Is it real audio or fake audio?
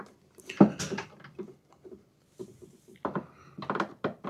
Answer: real